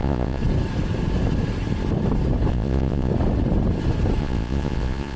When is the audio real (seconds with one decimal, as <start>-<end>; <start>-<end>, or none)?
0.4-2.5; 3.1-4.2